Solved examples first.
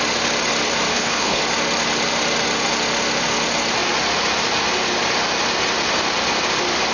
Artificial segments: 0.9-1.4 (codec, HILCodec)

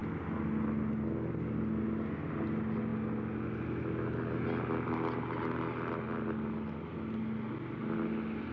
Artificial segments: none

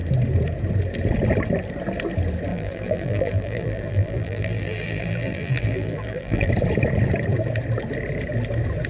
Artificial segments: 2.5-6.5 (vocoder, BigVGAN v2)